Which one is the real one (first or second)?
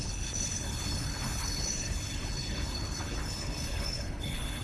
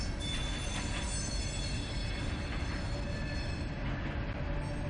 second